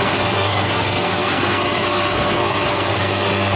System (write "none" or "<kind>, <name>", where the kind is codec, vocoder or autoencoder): codec, SNAC